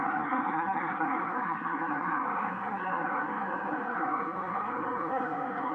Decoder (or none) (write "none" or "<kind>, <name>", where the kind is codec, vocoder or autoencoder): codec, SNAC